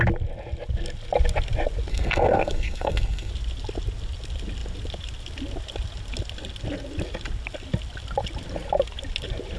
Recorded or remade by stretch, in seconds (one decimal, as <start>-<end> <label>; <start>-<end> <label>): 0.0-1.9 recorded; 1.9-3.3 remade; 3.3-9.6 recorded